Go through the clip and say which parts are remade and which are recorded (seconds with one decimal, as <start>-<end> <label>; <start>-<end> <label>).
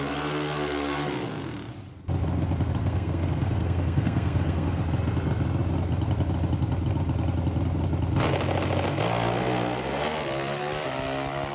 0.0-2.8 recorded; 2.8-4.8 remade; 4.8-11.5 recorded